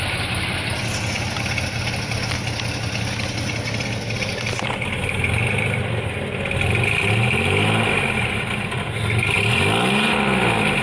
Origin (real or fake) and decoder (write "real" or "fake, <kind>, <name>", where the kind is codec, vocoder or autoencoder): real